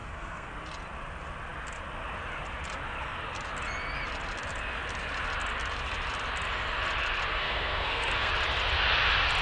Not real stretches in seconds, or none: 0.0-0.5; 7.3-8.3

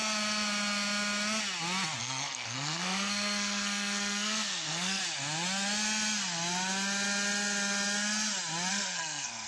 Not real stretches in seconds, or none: 2.0-5.0; 8.7-9.5

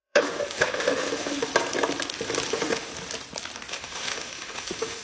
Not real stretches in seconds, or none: 0.0-1.5; 2.5-2.9; 3.7-5.0

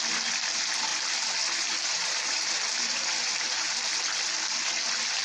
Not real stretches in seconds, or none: 0.9-4.0